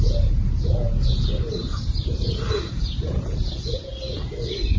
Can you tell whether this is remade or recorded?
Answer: recorded